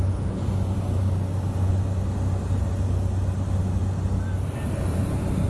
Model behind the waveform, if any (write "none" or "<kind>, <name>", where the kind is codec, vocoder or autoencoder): none